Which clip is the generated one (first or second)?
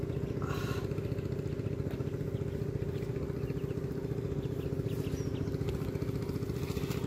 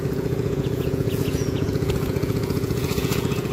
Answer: second